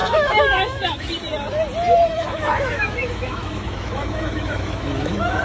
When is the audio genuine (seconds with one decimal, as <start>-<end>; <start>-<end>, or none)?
1.1-2.1